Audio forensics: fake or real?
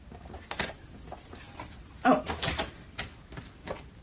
real